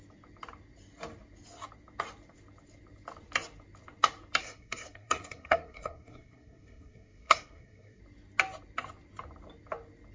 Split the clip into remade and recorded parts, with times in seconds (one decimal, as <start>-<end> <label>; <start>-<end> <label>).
0.0-4.4 recorded; 4.4-8.0 remade; 8.0-10.1 recorded